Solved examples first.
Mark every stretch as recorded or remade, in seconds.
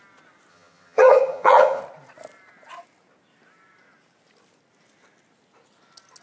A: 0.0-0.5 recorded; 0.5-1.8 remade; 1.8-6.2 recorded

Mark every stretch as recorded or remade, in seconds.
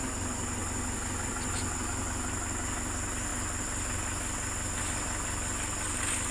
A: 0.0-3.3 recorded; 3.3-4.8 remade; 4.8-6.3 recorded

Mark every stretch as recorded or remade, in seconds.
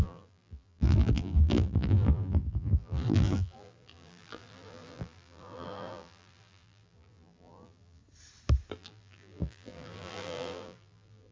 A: 0.0-8.0 remade; 8.0-8.7 recorded; 8.7-11.3 remade